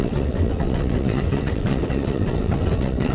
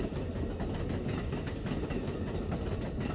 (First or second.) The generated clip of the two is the first